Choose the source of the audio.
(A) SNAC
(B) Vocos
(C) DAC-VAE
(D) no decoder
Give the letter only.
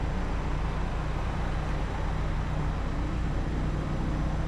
D